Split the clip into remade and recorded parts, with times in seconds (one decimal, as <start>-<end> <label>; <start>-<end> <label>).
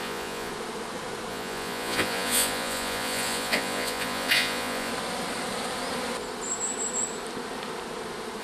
0.0-0.5 remade; 0.5-1.3 recorded; 1.3-4.9 remade; 4.9-8.4 recorded